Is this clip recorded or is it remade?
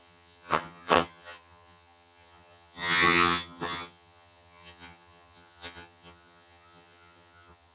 remade